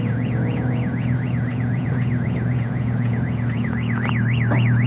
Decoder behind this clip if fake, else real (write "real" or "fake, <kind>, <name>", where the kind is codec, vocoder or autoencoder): fake, vocoder, Vocos